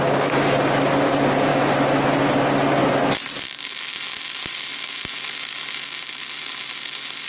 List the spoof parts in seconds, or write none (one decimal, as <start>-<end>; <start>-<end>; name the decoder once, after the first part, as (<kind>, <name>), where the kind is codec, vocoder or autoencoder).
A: none